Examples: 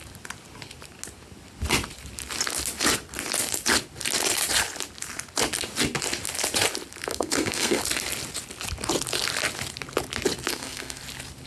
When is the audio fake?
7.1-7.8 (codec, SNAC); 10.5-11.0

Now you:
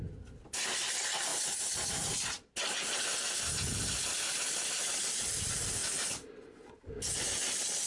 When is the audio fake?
0.0-1.3 (vocoder, BigVGAN v2); 2.6-3.7; 4.6-5.8; 7.5-7.9

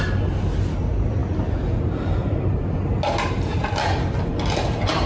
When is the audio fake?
none

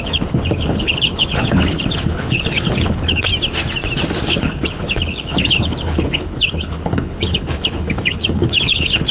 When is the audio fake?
0.0-3.3 (codec, HILCodec); 4.3-9.1

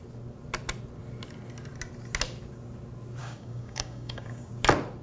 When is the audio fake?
3.2-4.5 (codec, DAC)

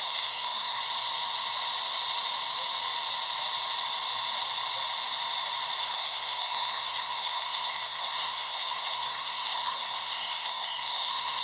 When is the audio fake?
0.0-0.8 (codec, SNAC); 5.8-11.4

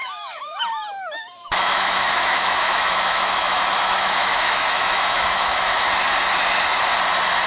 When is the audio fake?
0.0-0.6 (autoencoder, DAC-VAE); 1.3-5.8